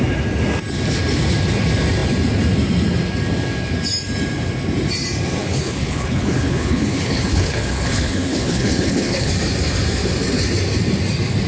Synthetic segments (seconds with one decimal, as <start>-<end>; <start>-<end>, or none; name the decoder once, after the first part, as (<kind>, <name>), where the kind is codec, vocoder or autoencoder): 5.4-9.3 (codec, HILCodec)